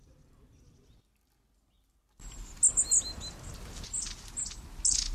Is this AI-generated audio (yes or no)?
no